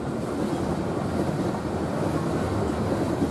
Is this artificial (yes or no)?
no